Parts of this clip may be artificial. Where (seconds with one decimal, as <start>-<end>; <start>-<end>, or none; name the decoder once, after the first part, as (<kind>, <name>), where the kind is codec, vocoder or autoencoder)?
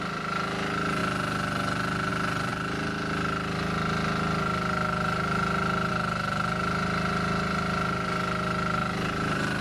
8.8-9.6 (vocoder, BigVGAN v2)